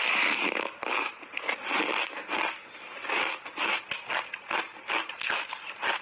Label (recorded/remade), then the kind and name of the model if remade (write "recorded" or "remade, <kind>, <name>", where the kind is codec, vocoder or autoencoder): recorded